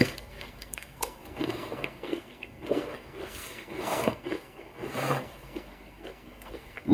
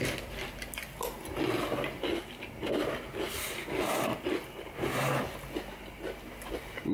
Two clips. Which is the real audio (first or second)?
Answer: second